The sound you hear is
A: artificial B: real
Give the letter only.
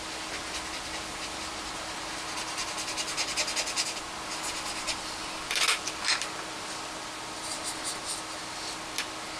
B